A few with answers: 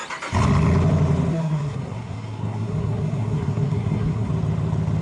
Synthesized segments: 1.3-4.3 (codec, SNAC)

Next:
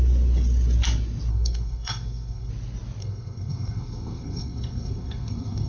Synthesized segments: 1.3-2.5 (codec, SNAC); 3.0-5.7

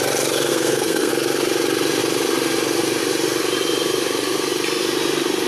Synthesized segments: 0.5-1.1 (codec, SNAC)